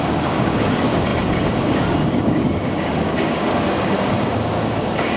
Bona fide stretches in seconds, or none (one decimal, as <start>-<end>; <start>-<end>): none